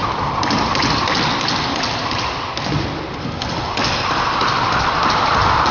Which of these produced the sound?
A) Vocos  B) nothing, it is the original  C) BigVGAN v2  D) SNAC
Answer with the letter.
B